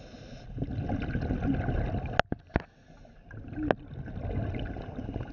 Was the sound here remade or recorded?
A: recorded